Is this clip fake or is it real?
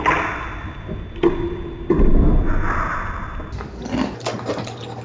real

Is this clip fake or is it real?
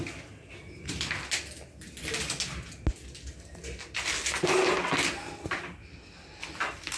real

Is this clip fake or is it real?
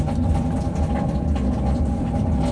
real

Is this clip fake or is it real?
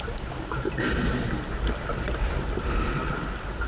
real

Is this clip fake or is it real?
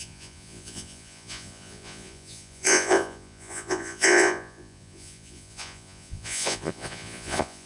fake